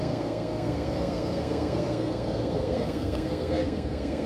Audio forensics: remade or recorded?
remade